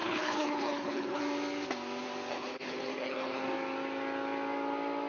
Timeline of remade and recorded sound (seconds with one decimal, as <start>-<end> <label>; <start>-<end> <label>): 0.0-1.2 remade; 1.2-2.3 recorded; 2.3-3.4 remade; 3.4-5.1 recorded